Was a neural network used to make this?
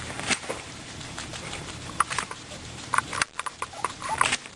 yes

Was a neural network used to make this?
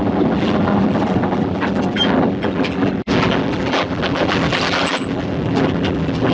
yes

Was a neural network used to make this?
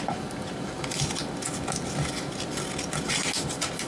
no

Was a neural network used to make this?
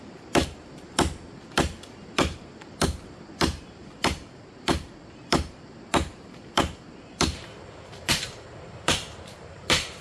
yes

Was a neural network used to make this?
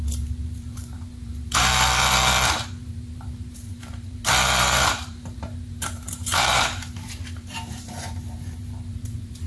yes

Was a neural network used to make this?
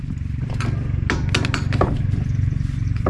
no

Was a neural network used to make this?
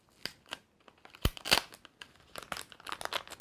no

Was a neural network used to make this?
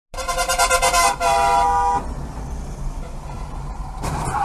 no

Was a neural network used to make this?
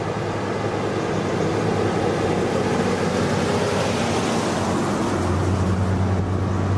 no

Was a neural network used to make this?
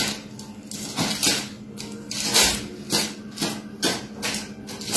no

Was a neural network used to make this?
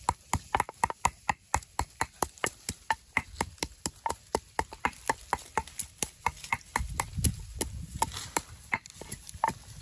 yes